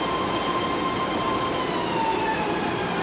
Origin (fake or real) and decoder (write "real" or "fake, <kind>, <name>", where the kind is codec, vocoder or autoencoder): real